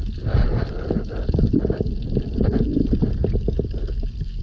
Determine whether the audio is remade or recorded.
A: recorded